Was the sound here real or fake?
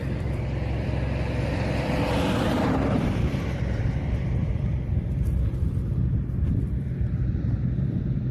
fake